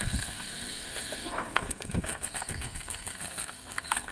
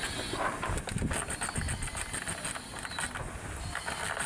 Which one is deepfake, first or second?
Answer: first